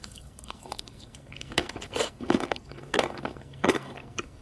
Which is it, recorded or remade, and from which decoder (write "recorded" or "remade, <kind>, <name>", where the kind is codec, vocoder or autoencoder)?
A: remade, codec, SNAC